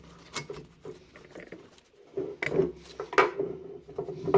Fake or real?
real